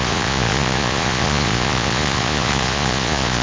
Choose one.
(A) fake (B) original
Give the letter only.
A